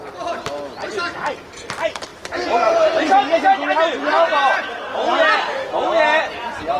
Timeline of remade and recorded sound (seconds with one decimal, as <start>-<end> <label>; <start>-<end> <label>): 0.0-6.8 recorded